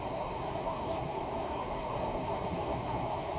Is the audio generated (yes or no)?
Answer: yes